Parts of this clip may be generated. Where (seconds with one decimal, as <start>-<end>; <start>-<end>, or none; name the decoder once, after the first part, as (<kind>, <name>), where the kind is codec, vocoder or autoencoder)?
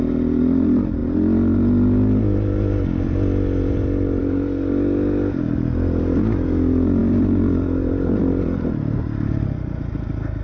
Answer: none